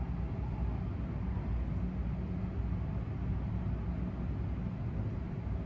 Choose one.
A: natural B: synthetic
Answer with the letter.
A